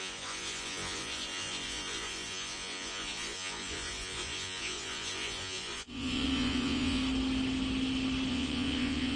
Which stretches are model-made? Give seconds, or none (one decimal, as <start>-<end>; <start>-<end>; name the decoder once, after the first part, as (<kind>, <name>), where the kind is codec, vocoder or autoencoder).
0.0-7.0 (vocoder, Vocos); 8.3-9.2